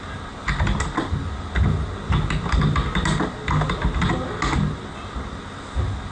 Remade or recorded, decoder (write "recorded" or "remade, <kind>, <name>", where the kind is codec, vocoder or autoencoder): recorded